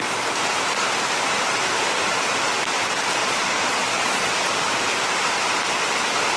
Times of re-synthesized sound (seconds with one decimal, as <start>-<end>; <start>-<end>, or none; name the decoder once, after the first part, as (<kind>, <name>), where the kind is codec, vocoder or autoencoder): 3.2-4.3 (vocoder, Vocos)